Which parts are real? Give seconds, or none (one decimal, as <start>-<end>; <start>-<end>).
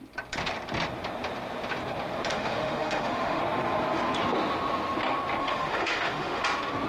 0.0-2.3; 3.4-5.4; 6.4-6.9